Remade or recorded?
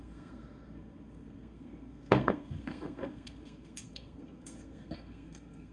remade